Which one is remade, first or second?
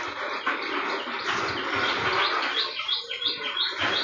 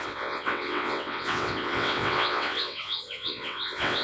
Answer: second